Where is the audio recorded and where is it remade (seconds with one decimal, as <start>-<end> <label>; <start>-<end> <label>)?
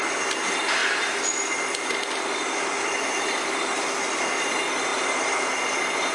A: 0.0-0.8 recorded; 0.8-4.5 remade; 4.5-4.9 recorded; 4.9-5.5 remade; 5.5-6.1 recorded